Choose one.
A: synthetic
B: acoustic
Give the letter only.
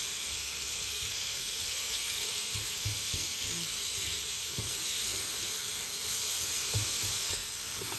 A